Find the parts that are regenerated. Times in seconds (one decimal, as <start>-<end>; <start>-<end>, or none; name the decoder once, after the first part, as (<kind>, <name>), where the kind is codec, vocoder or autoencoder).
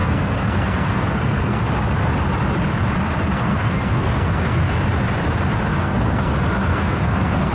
0.0-1.6 (codec, SNAC); 3.3-4.7; 5.7-6.3; 6.7-7.5